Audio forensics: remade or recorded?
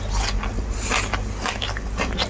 recorded